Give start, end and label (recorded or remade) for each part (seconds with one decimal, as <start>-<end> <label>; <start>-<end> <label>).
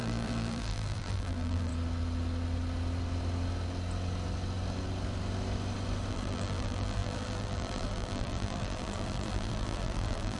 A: 0.0-1.7 remade; 1.7-6.1 recorded; 6.1-10.4 remade